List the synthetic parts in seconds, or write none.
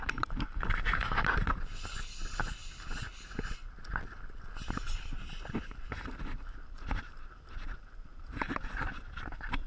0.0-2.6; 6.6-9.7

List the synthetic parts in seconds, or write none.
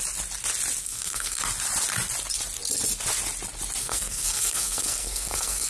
0.8-1.4; 3.8-5.7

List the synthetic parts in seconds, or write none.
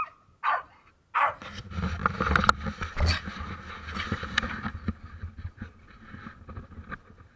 none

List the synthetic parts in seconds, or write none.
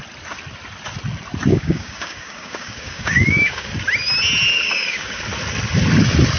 1.5-3.7; 4.5-5.2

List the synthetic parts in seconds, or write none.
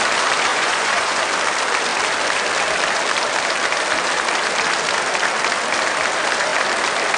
0.5-1.2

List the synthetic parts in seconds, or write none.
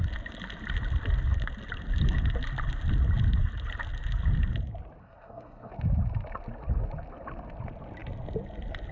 5.0-5.7